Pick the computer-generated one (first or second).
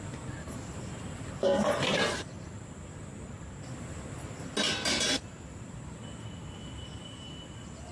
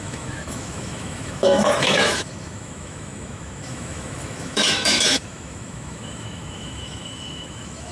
second